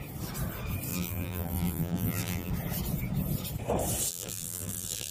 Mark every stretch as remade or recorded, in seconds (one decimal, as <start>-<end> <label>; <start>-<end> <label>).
0.0-0.9 recorded; 0.9-2.5 remade; 2.5-4.1 recorded; 4.1-5.1 remade